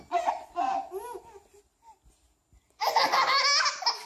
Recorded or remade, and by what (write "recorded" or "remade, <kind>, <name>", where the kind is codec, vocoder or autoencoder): recorded